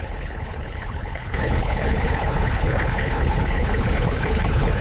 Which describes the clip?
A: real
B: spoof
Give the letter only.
B